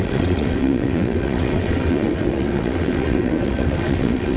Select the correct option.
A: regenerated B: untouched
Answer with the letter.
A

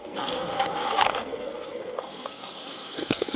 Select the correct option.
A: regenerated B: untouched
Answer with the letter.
A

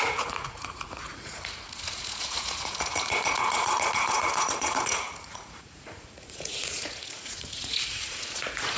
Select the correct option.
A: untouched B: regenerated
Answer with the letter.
B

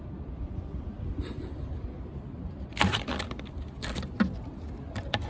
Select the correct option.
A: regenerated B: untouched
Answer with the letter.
A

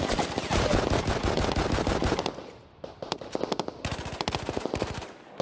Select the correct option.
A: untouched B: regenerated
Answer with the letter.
A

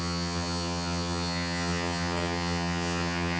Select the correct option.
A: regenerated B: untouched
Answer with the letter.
A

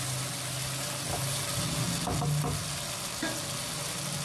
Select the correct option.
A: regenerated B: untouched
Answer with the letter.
B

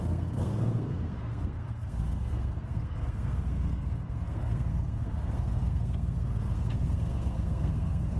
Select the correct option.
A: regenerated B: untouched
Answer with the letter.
A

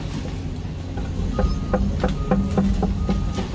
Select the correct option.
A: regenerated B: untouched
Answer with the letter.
B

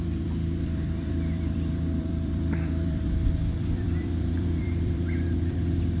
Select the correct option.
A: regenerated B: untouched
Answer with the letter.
A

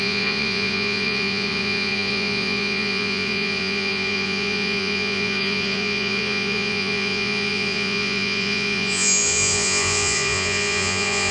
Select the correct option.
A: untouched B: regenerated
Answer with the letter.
B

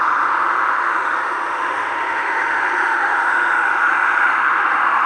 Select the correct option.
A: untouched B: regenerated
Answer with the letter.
B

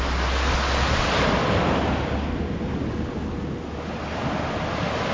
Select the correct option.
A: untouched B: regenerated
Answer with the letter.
A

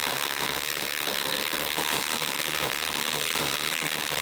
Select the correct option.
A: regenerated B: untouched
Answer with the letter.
A